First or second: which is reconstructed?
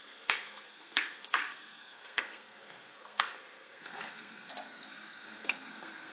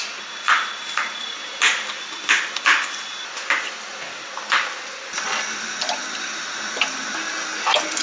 first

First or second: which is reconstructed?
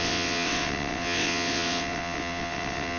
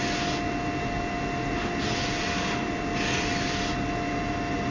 first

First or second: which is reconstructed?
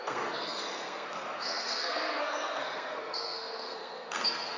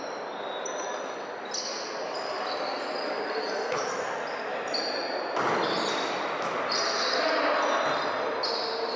first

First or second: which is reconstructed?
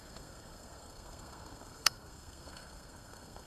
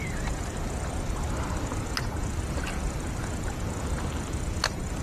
first